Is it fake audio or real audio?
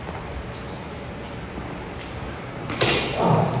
real